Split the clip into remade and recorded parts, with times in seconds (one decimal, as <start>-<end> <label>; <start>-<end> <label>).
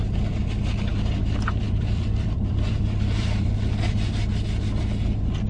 0.0-0.9 recorded; 0.9-4.2 remade; 4.2-5.5 recorded